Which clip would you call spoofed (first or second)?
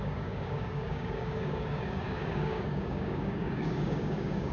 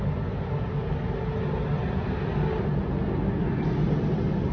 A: first